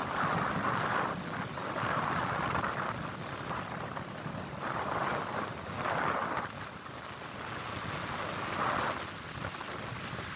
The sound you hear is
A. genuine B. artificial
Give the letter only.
A